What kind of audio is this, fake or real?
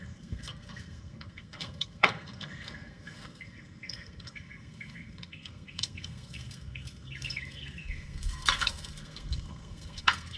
fake